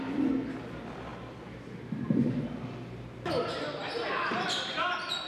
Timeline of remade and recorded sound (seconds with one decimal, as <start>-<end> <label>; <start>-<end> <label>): 0.0-5.3 recorded